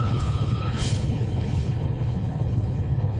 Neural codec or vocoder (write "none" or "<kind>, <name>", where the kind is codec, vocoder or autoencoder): codec, HILCodec